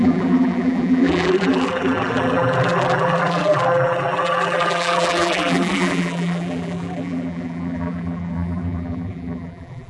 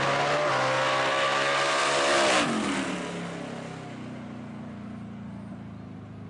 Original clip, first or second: second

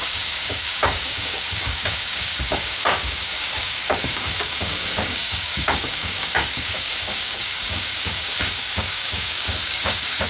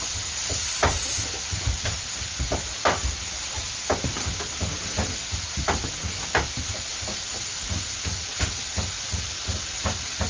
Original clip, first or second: second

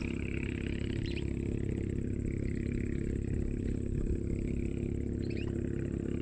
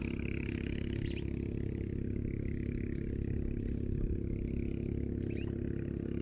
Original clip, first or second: second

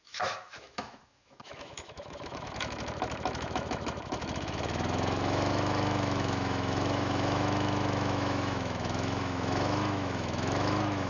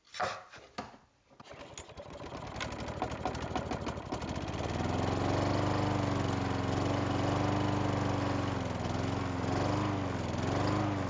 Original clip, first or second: second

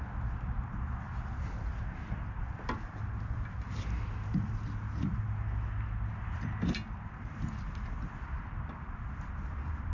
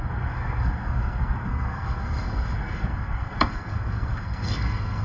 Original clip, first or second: first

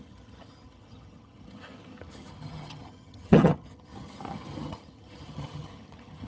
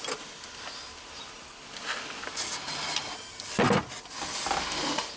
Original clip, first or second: second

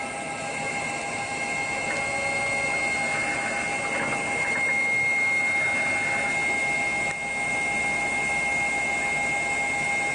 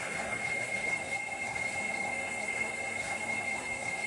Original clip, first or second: first